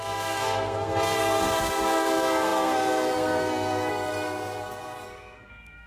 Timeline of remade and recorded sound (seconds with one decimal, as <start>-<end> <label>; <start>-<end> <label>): 0.0-5.9 remade